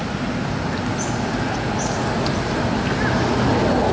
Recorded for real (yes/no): yes